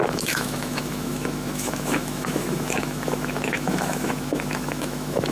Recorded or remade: remade